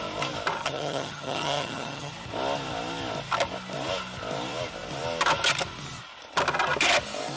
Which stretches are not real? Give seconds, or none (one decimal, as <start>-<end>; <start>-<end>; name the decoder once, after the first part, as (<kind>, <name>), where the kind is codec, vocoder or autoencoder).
0.6-2.1 (vocoder, HiFi-GAN)